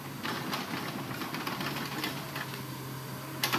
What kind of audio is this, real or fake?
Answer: real